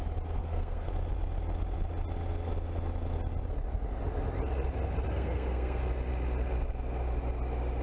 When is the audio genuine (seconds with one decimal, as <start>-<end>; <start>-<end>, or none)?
0.0-0.4; 0.9-5.1; 5.8-7.8